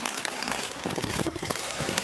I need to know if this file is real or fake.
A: fake